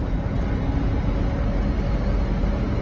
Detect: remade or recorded recorded